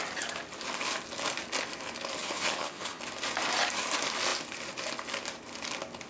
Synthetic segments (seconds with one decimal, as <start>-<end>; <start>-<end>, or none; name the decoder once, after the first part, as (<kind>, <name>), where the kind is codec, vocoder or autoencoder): 2.2-3.0 (vocoder, HiFi-GAN)